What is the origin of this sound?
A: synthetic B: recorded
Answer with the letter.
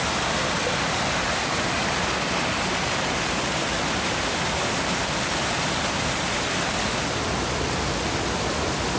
B